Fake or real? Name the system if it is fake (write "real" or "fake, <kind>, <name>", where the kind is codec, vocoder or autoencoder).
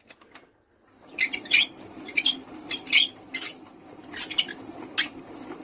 real